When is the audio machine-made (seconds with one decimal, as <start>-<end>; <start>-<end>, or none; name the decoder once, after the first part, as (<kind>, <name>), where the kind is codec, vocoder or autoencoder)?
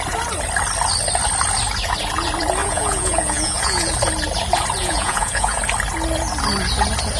2.6-3.9 (vocoder, Vocos); 4.8-5.6